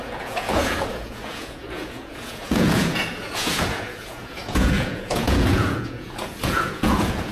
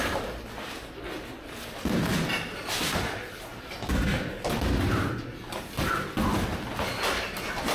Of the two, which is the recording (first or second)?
second